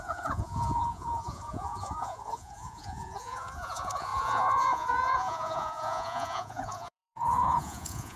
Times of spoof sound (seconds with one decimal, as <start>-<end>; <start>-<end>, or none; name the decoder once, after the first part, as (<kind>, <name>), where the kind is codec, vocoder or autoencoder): 0.0-8.2 (vocoder, Vocos)